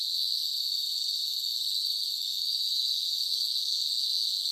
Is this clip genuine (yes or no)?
no